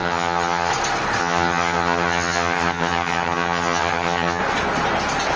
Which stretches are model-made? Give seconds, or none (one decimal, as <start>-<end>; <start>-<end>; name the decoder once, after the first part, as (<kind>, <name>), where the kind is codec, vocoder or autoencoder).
0.0-0.7 (vocoder, HiFi-GAN); 1.2-4.4